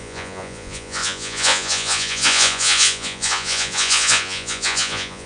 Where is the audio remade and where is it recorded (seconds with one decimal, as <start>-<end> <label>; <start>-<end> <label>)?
0.0-5.3 remade